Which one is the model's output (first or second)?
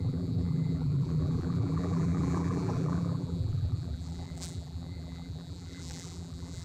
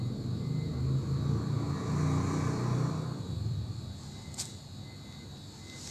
first